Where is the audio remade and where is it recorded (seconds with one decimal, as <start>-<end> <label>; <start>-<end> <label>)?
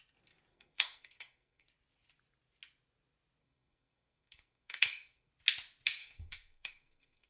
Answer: 0.0-0.5 recorded; 0.5-1.7 remade; 1.7-3.4 recorded; 3.4-5.3 remade; 5.3-6.0 recorded; 6.0-7.3 remade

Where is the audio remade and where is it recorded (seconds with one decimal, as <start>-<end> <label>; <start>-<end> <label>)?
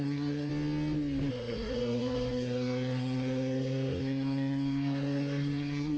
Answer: 0.0-0.5 remade; 0.5-1.3 recorded; 1.3-6.0 remade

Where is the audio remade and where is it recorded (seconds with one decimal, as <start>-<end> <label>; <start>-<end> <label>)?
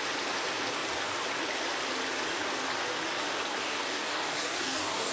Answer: 0.0-3.6 recorded; 3.6-5.1 remade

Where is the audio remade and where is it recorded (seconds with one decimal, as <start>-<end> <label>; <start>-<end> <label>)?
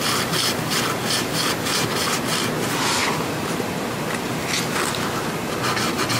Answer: 0.0-3.0 recorded; 3.0-4.0 remade; 4.0-6.2 recorded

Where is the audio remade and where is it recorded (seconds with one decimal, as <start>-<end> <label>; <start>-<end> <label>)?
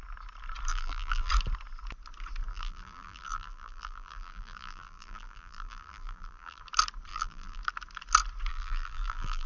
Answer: 0.0-0.7 recorded; 0.7-1.3 remade; 1.3-2.5 recorded; 2.5-6.6 remade; 6.6-7.1 recorded; 7.1-7.6 remade; 7.6-8.5 recorded; 8.5-9.5 remade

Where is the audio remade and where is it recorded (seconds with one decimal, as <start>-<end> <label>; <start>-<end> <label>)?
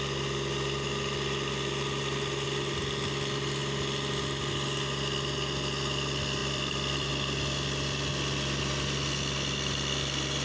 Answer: 0.0-6.4 recorded; 6.4-7.1 remade; 7.1-10.4 recorded